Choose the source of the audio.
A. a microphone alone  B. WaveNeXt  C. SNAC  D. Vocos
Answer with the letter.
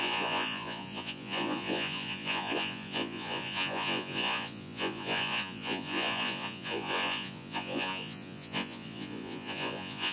D